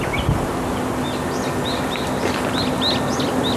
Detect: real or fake real